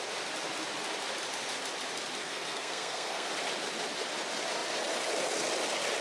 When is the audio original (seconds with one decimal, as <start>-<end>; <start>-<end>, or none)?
0.0-2.2; 3.3-6.0